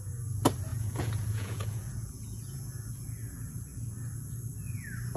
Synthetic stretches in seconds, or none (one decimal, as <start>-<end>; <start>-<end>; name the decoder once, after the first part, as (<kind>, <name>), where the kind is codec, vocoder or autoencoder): 0.7-2.9 (vocoder, Vocos)